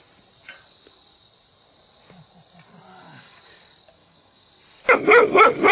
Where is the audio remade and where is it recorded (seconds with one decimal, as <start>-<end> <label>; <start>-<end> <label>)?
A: 0.0-2.9 recorded; 2.9-3.4 remade; 3.4-4.0 recorded; 4.0-4.5 remade; 4.5-5.7 recorded